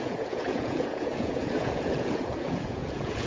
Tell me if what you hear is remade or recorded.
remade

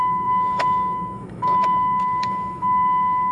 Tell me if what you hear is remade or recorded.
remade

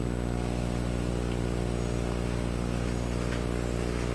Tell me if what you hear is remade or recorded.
recorded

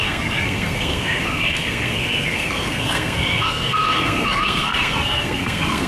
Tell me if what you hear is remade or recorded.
remade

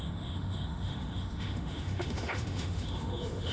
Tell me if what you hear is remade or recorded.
remade